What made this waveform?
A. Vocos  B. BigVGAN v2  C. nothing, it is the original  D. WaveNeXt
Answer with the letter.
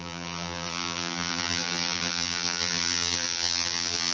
B